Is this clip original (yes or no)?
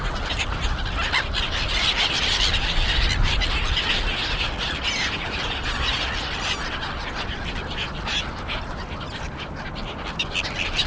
yes